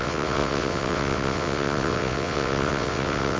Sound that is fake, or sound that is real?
fake